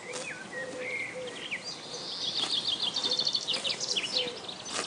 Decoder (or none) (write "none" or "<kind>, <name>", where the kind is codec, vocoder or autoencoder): none